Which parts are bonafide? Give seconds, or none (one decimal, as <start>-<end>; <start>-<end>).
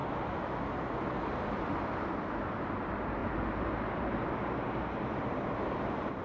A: 0.0-2.8